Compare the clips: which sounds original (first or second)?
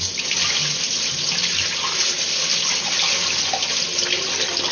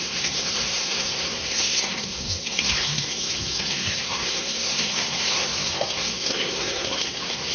first